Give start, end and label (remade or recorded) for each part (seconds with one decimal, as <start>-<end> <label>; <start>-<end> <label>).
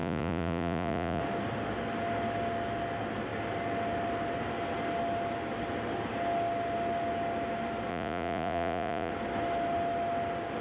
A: 0.0-1.2 remade; 1.2-7.9 recorded; 7.9-9.1 remade; 9.1-10.6 recorded